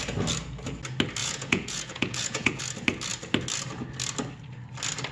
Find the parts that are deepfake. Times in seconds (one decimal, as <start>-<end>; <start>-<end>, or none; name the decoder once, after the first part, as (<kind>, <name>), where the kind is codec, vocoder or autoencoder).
1.2-2.6 (vocoder, Vocos)